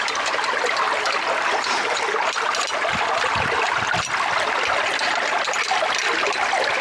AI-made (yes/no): no